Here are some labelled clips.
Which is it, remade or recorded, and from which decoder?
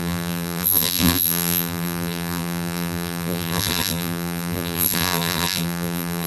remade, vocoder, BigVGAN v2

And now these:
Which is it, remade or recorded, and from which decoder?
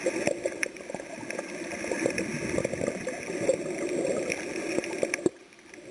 recorded